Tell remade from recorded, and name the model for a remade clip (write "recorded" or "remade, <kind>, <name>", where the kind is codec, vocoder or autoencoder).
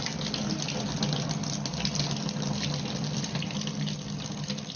recorded